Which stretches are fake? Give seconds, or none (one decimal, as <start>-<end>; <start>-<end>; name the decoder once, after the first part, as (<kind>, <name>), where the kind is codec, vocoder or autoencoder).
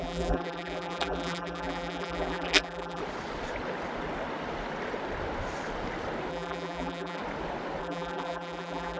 0.0-3.0 (vocoder, BigVGAN v2); 6.3-7.2; 7.8-9.0